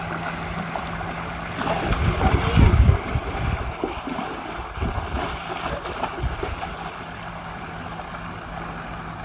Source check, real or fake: real